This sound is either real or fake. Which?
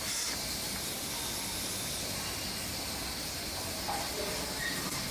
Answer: real